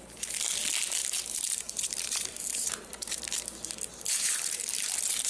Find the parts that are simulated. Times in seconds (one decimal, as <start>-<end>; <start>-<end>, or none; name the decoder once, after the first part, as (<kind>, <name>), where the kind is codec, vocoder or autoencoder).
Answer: 1.0-3.2 (vocoder, BigVGAN v2); 3.9-5.3